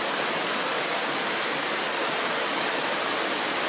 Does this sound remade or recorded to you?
recorded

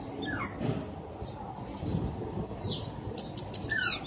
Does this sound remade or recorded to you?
recorded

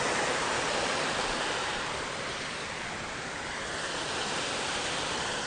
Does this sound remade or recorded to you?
recorded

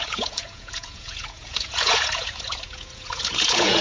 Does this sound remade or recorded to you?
remade